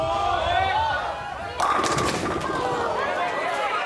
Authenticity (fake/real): real